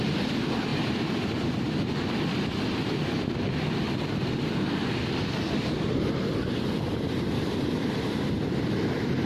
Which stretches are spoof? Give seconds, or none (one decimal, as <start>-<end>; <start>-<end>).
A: none